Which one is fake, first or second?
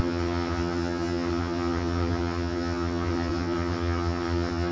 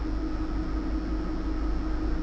first